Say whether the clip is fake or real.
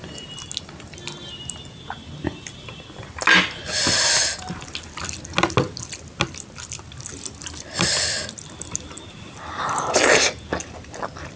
real